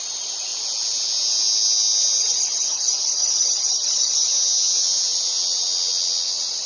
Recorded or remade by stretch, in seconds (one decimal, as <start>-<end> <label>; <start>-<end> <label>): 0.0-2.2 recorded; 2.2-4.3 remade; 4.3-6.7 recorded